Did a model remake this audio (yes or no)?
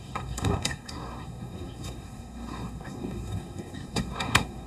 yes